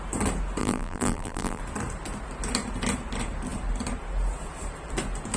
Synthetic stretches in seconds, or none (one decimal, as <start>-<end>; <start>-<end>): 0.6-1.6